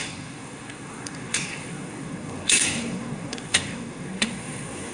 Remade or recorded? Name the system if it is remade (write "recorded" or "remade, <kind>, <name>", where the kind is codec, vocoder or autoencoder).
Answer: remade, codec, SNAC